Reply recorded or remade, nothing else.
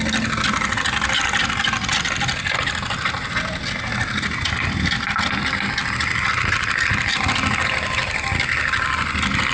recorded